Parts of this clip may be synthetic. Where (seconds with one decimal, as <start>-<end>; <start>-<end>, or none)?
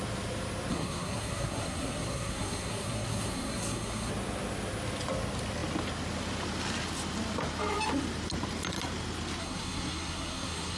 0.7-4.1; 9.4-10.8